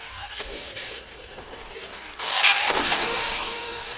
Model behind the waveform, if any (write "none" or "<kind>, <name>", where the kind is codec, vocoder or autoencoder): codec, DAC